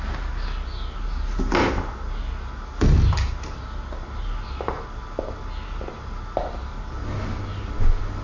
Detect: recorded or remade recorded